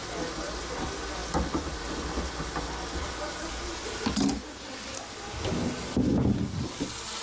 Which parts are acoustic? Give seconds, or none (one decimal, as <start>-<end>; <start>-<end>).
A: 0.0-7.2

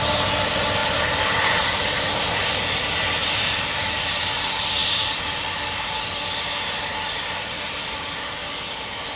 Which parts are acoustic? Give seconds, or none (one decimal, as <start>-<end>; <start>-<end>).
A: 0.0-0.8; 2.3-3.2; 3.8-4.8; 5.8-9.2

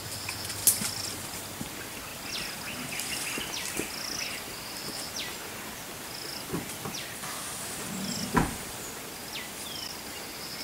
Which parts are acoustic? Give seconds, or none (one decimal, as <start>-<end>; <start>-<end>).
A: 0.0-6.3; 7.0-10.6

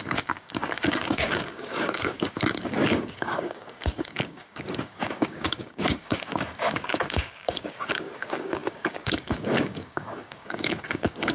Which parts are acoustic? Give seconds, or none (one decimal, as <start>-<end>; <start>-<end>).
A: none

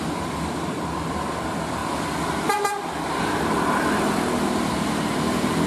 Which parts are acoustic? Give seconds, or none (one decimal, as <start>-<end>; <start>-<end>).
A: 0.0-5.7

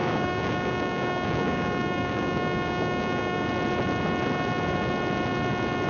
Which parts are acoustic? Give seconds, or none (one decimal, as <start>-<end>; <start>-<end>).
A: 3.5-5.9

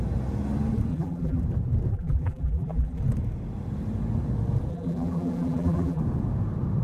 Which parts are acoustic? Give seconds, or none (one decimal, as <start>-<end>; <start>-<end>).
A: 0.0-0.9; 1.4-1.9; 3.0-4.7; 6.0-6.8